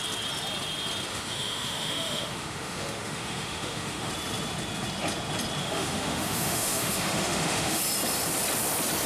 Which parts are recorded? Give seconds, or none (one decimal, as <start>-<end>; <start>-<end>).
0.0-1.1; 4.1-5.6; 7.8-9.1